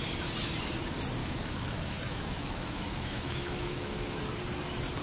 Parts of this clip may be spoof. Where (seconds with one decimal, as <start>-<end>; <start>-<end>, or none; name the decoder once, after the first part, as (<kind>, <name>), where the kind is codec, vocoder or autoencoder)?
1.2-4.2 (autoencoder, DAC-VAE)